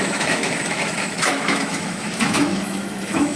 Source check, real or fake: fake